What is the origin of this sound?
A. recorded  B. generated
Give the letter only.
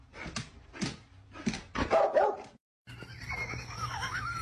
A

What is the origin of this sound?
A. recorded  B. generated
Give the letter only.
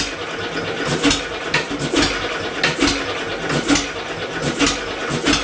A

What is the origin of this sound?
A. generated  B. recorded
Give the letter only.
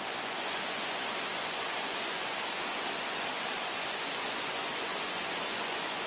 A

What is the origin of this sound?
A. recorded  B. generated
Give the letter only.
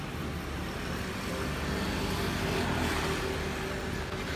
A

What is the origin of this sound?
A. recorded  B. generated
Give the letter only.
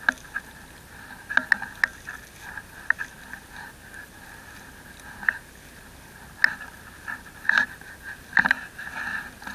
A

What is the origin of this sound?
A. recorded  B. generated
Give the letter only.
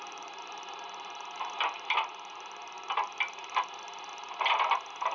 A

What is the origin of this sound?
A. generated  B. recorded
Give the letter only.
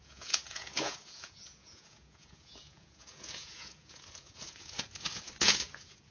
A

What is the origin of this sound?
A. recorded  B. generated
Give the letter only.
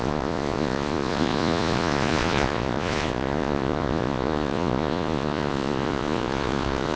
B